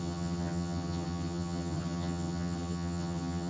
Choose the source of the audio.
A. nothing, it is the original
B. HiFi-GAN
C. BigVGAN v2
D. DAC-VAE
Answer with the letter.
B